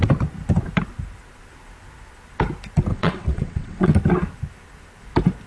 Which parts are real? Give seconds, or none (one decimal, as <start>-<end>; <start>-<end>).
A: 0.0-2.9; 3.9-5.5